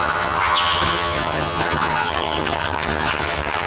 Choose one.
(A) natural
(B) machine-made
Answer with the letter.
B